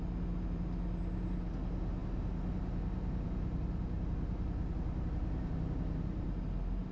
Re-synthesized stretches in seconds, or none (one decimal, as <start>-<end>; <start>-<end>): none